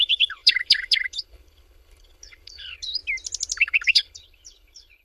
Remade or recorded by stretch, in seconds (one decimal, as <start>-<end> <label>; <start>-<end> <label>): 0.0-3.0 remade; 3.0-3.6 recorded; 3.6-5.0 remade